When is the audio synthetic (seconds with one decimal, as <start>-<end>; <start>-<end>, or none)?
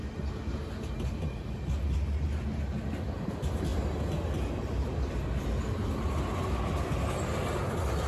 none